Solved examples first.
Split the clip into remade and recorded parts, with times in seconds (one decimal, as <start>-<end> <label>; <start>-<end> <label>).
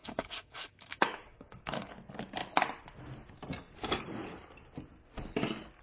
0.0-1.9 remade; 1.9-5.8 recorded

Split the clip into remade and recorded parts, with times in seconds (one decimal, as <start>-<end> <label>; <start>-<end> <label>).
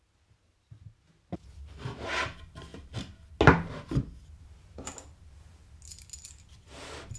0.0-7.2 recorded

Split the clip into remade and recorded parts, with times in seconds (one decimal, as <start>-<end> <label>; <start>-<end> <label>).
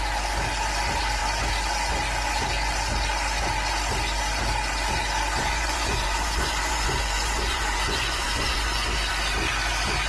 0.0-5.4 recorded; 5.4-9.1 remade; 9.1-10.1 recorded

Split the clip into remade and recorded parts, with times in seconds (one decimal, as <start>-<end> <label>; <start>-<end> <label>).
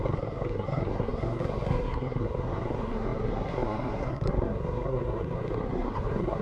0.0-6.4 remade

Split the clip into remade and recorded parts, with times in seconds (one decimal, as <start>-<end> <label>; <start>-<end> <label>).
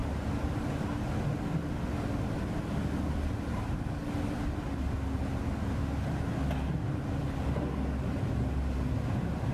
0.0-9.5 recorded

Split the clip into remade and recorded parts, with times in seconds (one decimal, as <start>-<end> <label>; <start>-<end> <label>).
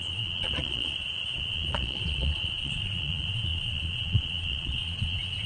0.0-5.5 remade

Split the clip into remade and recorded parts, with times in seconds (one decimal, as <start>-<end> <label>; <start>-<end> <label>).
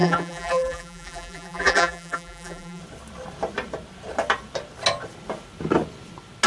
0.0-2.8 remade; 2.8-6.5 recorded